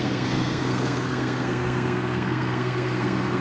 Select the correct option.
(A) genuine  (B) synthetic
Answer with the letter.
B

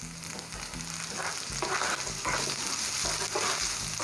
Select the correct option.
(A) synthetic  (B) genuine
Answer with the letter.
B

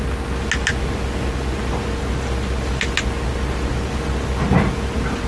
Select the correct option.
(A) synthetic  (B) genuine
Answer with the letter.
B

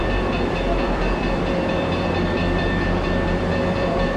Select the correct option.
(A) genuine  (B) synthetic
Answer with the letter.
B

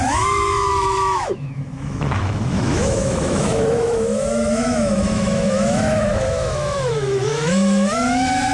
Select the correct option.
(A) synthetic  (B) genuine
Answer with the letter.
A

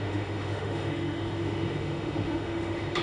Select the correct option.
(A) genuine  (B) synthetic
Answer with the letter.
B